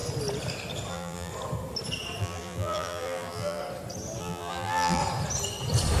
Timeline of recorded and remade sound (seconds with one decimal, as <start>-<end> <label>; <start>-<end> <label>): 0.0-0.9 recorded; 0.9-1.3 remade; 1.3-2.2 recorded; 2.2-3.6 remade; 3.6-4.2 recorded; 4.2-5.0 remade; 5.0-6.0 recorded